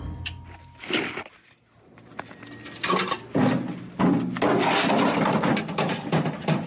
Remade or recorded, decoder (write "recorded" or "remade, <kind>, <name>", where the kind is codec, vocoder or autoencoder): recorded